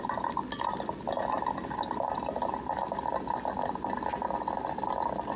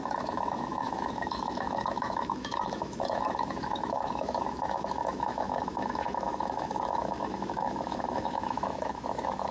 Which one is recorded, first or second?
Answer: first